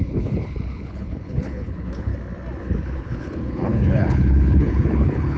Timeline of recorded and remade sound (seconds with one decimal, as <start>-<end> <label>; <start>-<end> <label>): 0.0-2.1 remade; 2.1-2.6 recorded; 2.6-5.4 remade